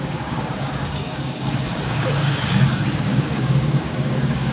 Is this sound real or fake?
fake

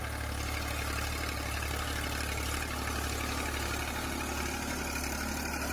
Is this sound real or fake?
real